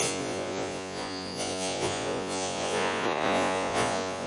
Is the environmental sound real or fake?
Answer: fake